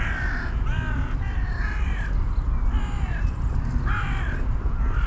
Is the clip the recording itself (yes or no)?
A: yes